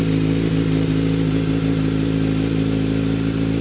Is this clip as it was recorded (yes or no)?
yes